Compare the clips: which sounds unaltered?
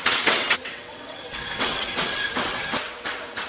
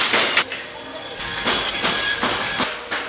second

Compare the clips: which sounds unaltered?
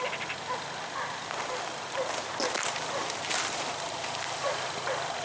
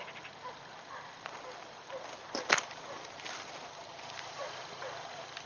first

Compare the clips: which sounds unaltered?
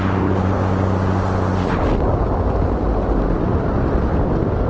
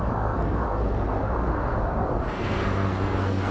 first